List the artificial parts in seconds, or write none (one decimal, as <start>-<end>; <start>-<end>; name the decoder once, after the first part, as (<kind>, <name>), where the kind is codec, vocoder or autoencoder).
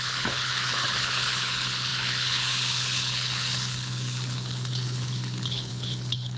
0.0-6.4 (codec, HILCodec)